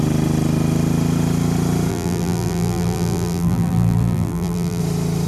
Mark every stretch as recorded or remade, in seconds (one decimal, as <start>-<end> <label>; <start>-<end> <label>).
0.0-1.9 recorded; 1.9-4.8 remade; 4.8-5.3 recorded